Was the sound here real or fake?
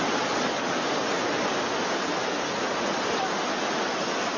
real